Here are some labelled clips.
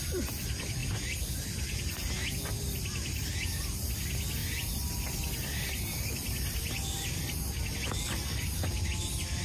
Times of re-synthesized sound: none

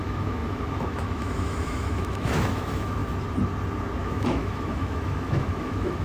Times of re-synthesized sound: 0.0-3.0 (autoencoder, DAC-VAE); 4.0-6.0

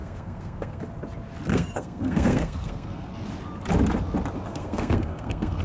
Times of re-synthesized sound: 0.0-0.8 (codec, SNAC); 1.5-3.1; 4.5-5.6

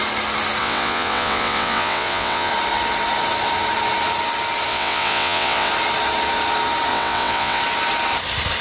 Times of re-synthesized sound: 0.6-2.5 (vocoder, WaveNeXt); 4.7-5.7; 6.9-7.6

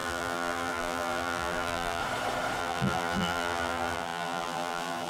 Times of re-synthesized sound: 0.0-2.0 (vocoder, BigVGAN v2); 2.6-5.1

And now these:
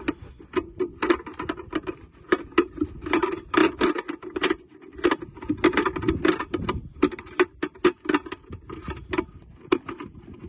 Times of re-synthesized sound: none

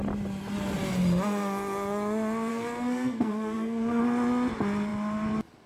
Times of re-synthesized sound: 2.5-4.0 (codec, SNAC)

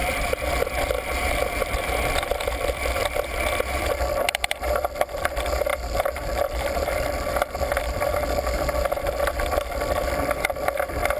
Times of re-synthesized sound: 0.0-11.2 (vocoder, BigVGAN v2)